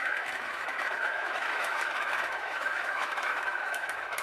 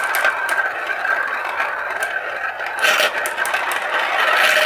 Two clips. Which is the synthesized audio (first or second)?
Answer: first